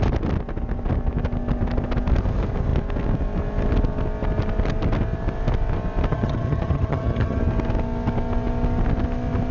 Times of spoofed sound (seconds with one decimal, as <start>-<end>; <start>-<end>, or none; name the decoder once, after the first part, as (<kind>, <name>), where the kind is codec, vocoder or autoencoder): 6.1-7.4 (vocoder, HiFi-GAN)